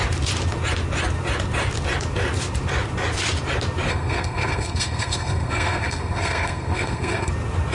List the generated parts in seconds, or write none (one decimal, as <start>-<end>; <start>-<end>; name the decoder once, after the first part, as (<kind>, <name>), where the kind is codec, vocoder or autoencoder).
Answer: 3.9-7.3 (codec, SNAC)